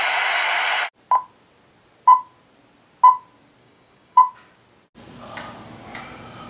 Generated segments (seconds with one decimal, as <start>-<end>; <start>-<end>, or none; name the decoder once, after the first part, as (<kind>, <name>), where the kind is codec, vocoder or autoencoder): 3.6-4.2 (codec, DAC)